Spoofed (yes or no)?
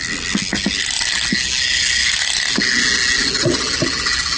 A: no